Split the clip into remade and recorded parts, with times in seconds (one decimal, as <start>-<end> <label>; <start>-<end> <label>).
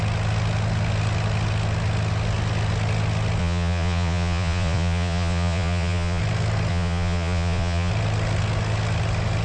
0.0-3.4 recorded; 3.4-6.2 remade; 6.2-6.7 recorded; 6.7-7.9 remade; 7.9-9.4 recorded